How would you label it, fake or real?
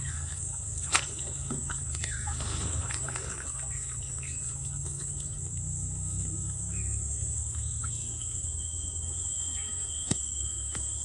fake